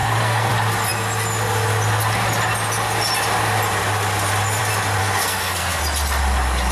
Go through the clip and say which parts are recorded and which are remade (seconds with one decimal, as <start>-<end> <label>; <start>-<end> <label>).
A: 0.0-0.5 remade; 0.5-5.0 recorded; 5.0-5.8 remade; 5.8-6.7 recorded